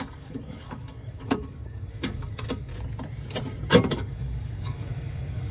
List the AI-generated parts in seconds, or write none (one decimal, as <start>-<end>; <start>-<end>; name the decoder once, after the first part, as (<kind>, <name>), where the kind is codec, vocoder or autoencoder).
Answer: 0.0-2.7 (codec, DAC); 3.9-5.5